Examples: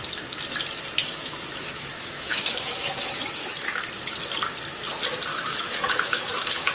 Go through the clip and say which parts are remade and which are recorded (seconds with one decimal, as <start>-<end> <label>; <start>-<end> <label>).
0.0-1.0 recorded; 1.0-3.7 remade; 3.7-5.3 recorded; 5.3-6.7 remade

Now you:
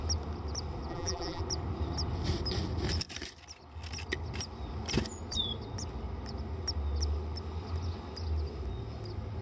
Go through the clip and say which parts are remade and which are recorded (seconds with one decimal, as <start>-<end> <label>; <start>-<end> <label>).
0.0-0.9 recorded; 0.9-1.4 remade; 1.4-9.4 recorded

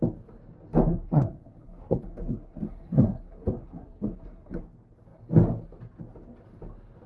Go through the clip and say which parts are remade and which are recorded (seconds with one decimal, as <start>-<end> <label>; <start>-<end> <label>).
0.0-0.9 recorded; 0.9-4.6 remade; 4.6-7.1 recorded

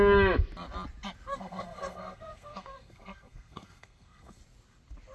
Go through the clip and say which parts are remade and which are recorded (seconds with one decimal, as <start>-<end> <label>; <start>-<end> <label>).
0.0-1.3 recorded; 1.3-4.4 remade; 4.4-5.1 recorded

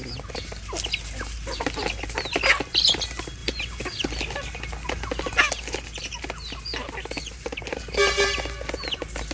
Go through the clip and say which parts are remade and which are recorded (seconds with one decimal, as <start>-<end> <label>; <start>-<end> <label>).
0.0-9.3 recorded

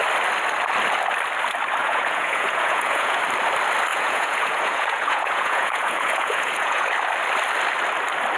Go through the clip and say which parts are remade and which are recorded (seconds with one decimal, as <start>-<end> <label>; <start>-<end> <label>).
0.0-1.8 recorded; 1.8-3.2 remade; 3.2-3.9 recorded; 3.9-6.9 remade; 6.9-8.4 recorded